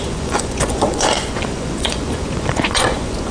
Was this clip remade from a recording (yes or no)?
yes